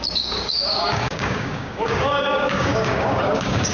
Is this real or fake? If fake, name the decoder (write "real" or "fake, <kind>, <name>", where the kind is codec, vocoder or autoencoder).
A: fake, codec, DAC